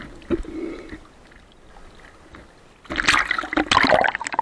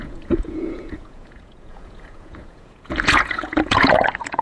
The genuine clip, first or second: first